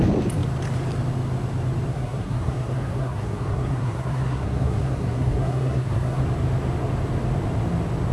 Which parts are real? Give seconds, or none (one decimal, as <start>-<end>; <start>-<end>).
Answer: 0.0-1.9; 6.2-8.1